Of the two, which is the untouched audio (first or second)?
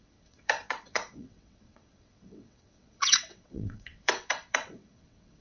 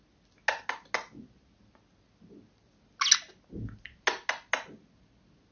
second